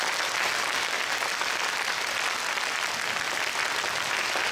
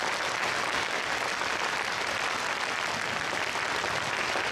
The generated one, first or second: second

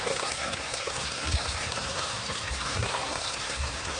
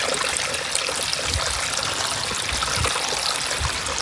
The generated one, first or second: first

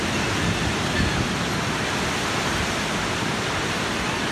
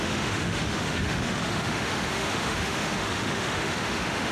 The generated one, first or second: second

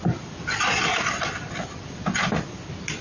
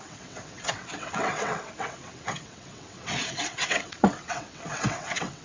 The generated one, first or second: second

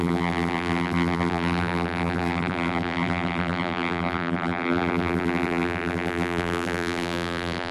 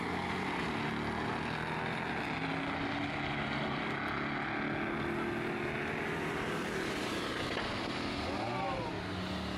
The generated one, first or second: first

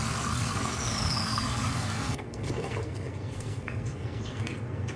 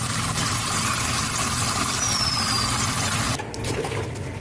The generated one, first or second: first